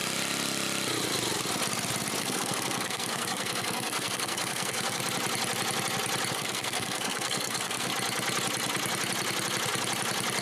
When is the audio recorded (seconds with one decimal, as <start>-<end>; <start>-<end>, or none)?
0.0-2.2; 5.0-6.3; 7.9-10.4